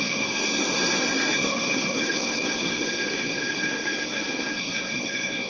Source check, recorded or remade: remade